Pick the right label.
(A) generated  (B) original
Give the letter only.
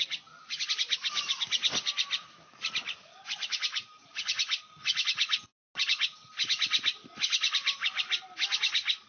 B